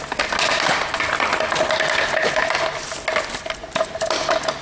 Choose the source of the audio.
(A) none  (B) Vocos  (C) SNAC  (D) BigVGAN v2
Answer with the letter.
A